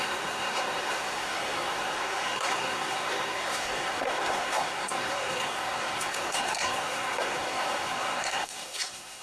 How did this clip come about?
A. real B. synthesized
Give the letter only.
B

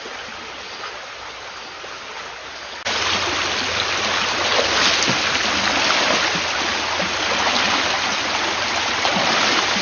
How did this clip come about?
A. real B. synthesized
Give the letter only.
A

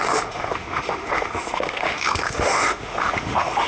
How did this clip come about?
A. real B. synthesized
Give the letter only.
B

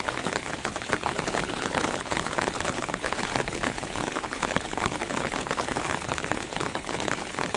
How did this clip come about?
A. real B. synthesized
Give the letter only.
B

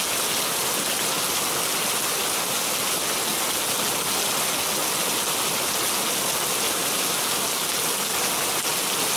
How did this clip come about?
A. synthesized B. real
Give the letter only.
B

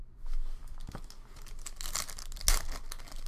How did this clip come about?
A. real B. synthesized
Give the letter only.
A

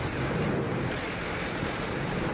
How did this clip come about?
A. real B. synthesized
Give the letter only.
A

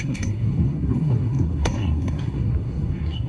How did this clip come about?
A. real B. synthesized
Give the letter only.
B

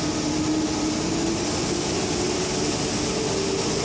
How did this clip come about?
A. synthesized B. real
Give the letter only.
B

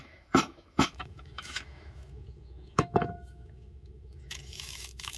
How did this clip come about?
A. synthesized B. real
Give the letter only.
A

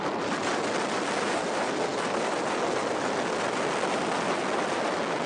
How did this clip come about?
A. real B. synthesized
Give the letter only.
A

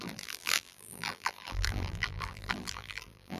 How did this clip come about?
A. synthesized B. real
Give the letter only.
A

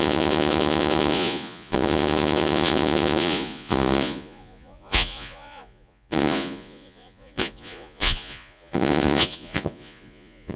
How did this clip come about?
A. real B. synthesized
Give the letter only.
B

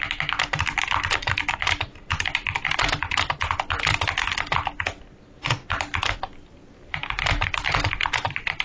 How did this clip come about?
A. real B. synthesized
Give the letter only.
A